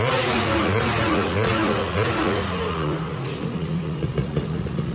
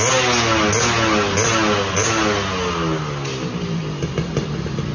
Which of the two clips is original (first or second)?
second